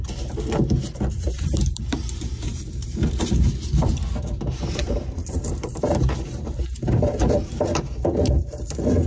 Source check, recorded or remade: remade